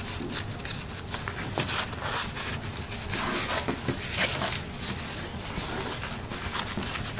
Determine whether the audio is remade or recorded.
recorded